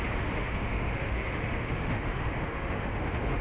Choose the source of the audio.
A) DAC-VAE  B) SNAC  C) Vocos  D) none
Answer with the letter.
A